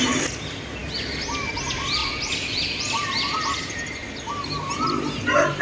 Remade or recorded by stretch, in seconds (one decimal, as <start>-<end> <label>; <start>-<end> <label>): 0.0-5.6 recorded

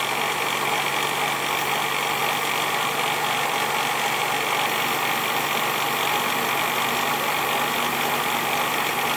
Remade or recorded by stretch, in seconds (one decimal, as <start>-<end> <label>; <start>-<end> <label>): 0.0-9.2 recorded

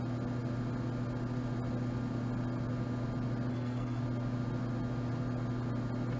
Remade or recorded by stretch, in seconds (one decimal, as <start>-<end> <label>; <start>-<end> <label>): 0.0-3.5 recorded; 3.5-4.0 remade; 4.0-6.2 recorded

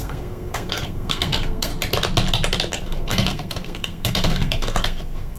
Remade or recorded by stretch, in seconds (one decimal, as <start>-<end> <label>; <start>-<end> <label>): 0.0-1.7 remade; 1.7-2.7 recorded; 2.7-5.4 remade

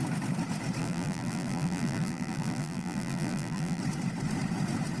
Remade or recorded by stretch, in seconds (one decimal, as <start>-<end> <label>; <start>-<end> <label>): 0.0-0.8 recorded; 0.8-3.8 remade; 3.8-5.0 recorded